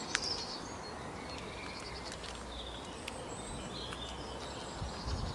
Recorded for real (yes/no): yes